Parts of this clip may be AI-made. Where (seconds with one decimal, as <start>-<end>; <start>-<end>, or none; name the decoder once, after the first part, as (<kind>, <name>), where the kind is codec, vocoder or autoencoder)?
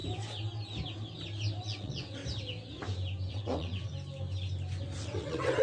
1.6-2.2 (vocoder, WaveNeXt); 3.3-3.9; 5.0-5.6